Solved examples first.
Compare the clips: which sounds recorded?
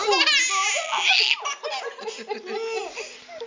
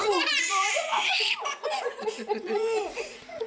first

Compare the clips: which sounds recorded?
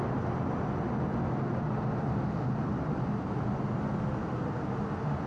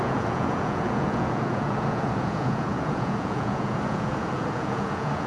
first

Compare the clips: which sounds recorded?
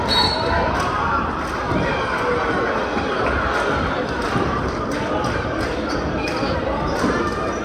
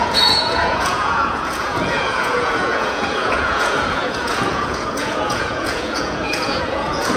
first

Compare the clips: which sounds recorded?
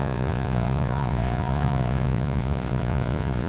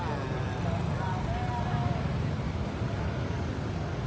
second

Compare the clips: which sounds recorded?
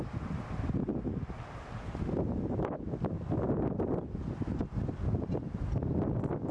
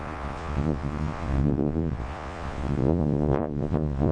first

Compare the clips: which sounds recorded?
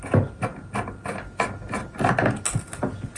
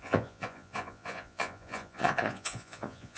first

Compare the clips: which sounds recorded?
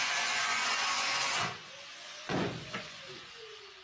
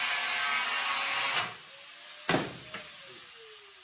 second